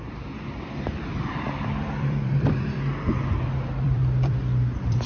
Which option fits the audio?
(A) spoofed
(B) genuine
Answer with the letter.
A